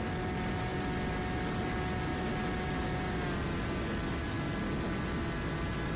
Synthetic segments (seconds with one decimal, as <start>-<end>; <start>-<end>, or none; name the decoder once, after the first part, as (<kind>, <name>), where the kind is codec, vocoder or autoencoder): none